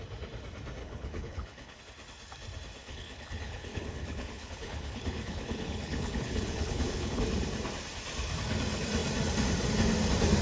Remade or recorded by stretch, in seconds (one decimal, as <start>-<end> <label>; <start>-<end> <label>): 0.0-0.8 recorded; 0.8-1.8 remade; 1.8-2.8 recorded; 2.8-7.2 remade; 7.2-10.4 recorded